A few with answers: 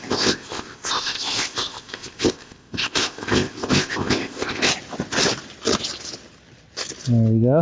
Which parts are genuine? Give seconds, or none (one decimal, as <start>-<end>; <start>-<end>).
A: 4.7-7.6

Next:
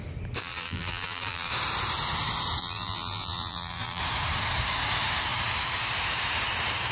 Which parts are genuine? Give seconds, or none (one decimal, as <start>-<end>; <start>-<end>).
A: 0.0-0.4; 1.5-2.6; 4.0-6.9

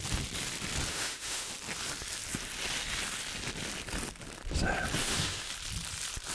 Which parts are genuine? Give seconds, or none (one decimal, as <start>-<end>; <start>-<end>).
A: 0.0-0.9; 1.5-5.0; 5.5-6.3

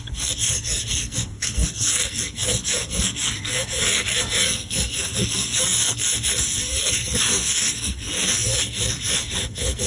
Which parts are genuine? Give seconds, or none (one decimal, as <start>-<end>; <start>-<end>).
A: none

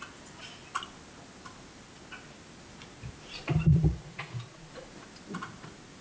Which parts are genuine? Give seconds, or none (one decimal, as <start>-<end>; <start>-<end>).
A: 0.0-3.7; 4.7-6.0

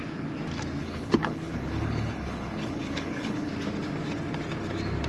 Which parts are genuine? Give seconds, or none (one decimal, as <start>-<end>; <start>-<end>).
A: 0.0-0.8; 3.5-5.1

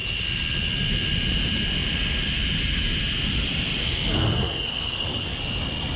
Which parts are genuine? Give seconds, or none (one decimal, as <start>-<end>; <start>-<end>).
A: 0.0-3.8; 5.4-6.0